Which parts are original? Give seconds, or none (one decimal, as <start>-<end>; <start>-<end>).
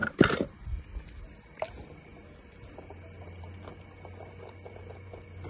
0.5-5.5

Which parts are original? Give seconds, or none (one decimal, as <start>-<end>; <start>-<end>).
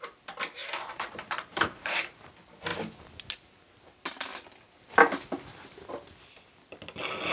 0.0-0.6; 2.3-7.3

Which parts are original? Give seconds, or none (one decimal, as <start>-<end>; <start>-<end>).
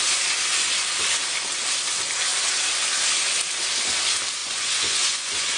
0.0-4.4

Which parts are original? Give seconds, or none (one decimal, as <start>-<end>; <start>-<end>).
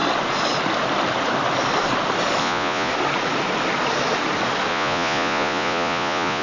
0.0-2.4; 2.9-4.7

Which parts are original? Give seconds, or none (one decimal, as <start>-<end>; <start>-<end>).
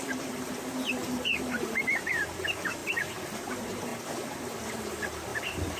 3.9-4.7; 5.3-5.8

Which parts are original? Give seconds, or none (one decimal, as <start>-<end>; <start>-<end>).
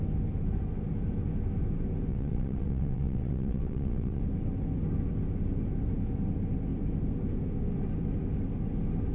0.0-2.1; 4.2-9.1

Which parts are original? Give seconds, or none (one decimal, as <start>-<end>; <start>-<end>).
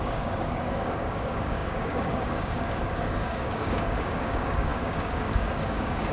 none